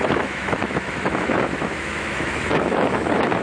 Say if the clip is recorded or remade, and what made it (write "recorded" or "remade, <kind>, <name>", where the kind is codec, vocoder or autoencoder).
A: remade, autoencoder, DAC-VAE